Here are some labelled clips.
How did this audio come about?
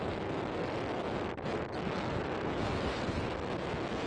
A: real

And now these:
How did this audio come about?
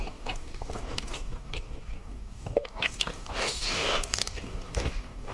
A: fake